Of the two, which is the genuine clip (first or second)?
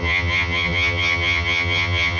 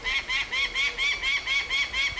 second